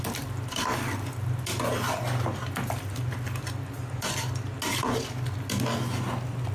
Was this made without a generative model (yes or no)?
yes